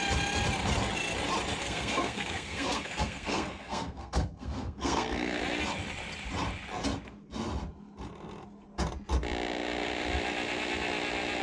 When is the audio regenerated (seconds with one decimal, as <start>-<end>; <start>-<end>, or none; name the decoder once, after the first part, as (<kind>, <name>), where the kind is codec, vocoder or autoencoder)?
1.6-5.4 (codec, SNAC)